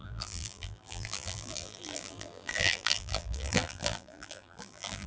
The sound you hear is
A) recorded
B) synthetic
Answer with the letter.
B